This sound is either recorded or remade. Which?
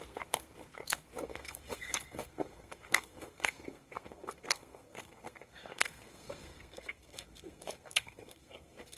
remade